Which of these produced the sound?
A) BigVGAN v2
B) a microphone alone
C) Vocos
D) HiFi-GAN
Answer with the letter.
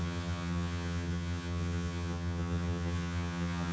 D